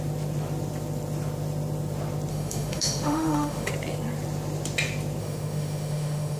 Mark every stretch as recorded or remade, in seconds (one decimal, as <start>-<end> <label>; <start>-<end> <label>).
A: 0.0-2.3 recorded; 2.3-3.7 remade; 3.7-5.2 recorded; 5.2-6.4 remade